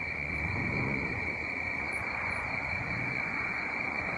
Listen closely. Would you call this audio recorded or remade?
remade